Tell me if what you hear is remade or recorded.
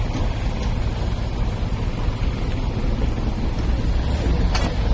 recorded